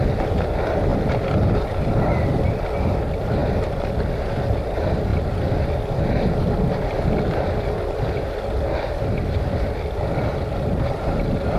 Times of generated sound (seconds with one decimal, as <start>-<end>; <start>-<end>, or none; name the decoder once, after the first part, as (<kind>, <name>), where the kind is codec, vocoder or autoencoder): 0.9-1.9 (vocoder, BigVGAN v2); 3.4-3.9